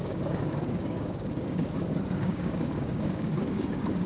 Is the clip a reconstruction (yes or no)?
yes